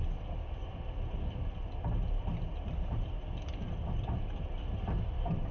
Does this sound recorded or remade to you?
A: recorded